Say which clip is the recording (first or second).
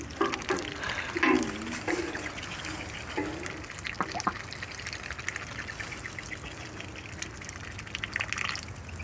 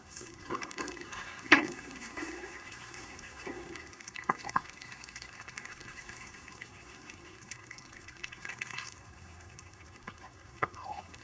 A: first